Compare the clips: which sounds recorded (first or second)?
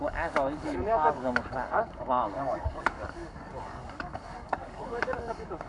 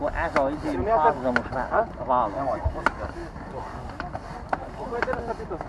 second